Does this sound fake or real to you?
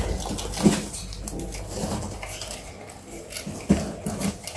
real